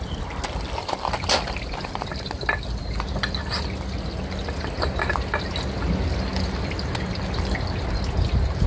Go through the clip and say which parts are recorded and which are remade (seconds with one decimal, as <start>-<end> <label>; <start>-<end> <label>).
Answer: 0.0-8.7 recorded